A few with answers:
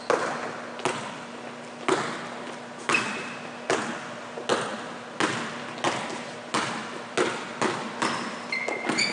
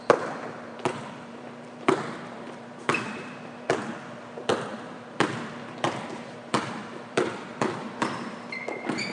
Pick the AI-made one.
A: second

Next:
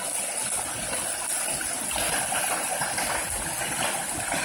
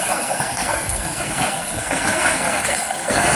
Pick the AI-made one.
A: second